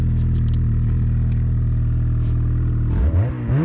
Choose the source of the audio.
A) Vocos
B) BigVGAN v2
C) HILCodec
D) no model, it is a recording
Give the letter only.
D